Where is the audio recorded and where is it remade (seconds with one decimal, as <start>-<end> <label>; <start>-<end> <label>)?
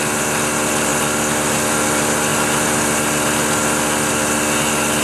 0.0-5.0 recorded